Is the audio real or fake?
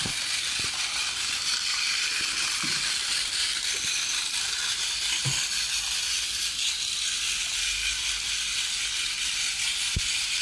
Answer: real